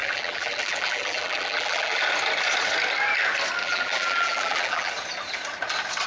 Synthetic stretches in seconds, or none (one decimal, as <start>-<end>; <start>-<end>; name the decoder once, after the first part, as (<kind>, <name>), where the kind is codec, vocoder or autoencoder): 0.0-2.0 (vocoder, BigVGAN v2); 3.6-4.9